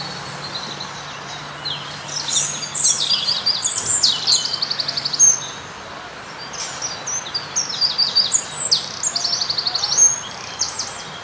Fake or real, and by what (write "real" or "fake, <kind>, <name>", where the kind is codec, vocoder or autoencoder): real